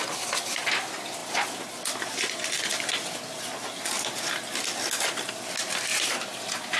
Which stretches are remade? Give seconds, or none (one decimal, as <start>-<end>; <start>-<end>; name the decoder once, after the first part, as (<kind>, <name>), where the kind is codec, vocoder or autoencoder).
none